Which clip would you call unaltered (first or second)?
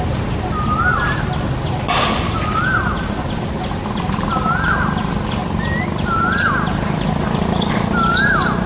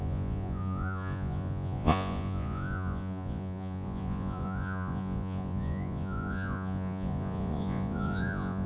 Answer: first